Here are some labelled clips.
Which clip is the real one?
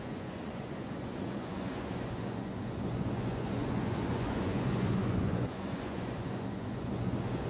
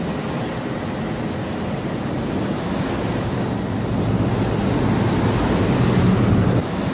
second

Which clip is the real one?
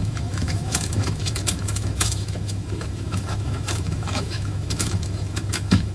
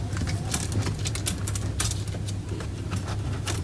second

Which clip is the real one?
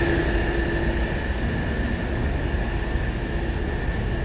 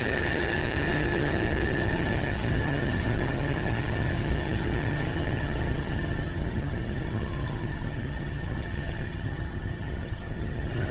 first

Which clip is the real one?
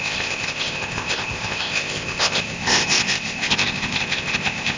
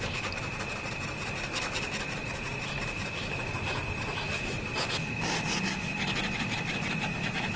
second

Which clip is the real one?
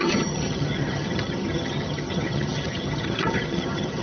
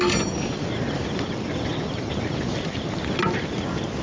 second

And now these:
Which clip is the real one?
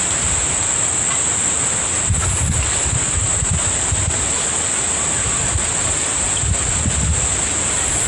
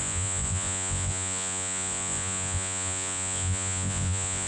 first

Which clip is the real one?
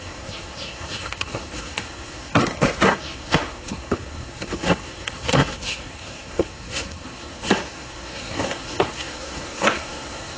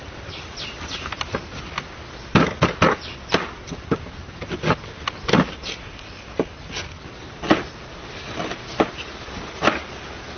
second